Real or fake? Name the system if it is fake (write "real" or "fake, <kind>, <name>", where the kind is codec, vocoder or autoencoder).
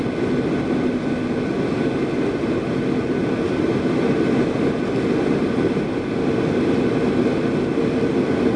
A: real